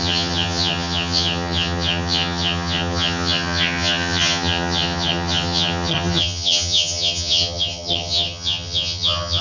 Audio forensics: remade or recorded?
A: remade